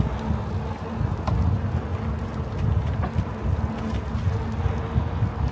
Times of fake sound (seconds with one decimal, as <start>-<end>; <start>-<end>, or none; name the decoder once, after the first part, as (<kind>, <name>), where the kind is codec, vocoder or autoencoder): none